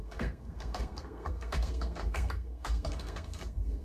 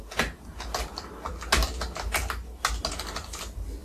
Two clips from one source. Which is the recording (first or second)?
second